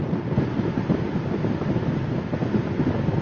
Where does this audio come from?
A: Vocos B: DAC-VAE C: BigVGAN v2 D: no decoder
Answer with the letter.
D